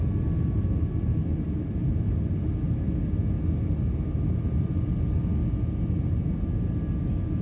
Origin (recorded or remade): recorded